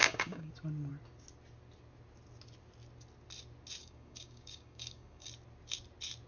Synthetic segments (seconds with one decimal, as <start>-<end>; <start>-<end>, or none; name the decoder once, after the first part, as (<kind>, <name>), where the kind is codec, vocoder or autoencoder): 0.0-0.5 (codec, DAC); 3.8-5.3